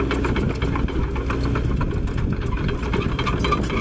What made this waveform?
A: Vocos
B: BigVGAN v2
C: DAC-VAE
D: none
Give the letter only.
D